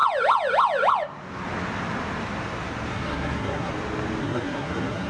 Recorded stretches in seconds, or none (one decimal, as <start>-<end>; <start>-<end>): 0.0-2.9; 3.7-4.2